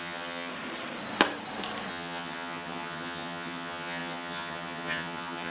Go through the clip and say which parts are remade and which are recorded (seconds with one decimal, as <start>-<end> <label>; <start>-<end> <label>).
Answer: 0.0-0.5 remade; 0.5-1.9 recorded; 1.9-5.5 remade